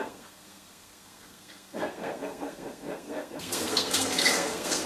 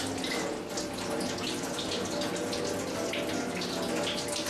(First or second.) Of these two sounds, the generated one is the first